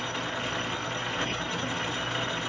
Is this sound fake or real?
real